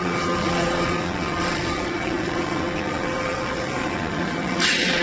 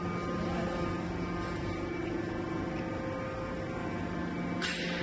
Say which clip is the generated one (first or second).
first